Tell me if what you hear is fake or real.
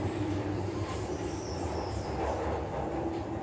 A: real